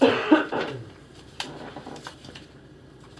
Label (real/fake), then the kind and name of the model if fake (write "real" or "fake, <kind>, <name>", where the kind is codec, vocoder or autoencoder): fake, vocoder, BigVGAN v2